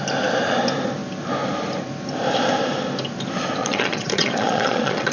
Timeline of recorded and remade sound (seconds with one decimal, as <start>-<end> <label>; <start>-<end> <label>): 0.0-3.6 recorded; 3.6-5.1 remade